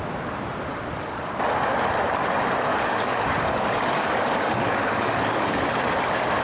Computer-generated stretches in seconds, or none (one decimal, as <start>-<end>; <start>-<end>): 0.7-1.3; 2.7-5.6